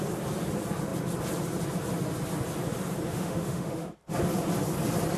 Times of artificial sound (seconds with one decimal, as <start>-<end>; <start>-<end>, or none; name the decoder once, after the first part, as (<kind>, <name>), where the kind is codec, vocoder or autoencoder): 3.1-3.9 (autoencoder, DAC-VAE)